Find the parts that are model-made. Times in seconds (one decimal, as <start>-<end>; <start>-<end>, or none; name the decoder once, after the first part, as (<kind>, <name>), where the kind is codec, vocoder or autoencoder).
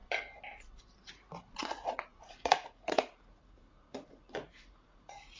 1.1-5.4 (vocoder, Vocos)